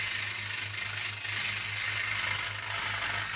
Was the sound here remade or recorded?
recorded